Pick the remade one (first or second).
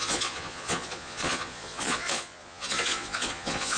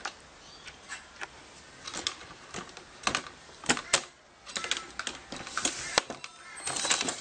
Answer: first